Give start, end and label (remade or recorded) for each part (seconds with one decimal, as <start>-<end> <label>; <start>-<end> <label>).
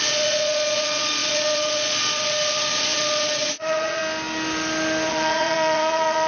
0.0-4.0 remade; 4.0-5.1 recorded; 5.1-6.3 remade